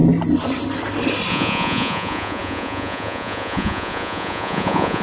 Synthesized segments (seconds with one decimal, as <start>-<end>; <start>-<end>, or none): 1.3-5.0